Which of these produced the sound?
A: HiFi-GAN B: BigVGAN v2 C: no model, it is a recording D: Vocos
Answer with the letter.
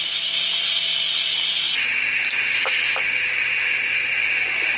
C